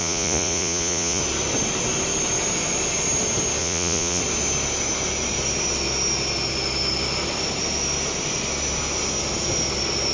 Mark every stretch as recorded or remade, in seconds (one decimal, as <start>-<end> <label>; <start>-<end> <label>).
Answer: 0.0-1.2 remade; 1.2-3.6 recorded; 3.6-4.2 remade; 4.2-10.1 recorded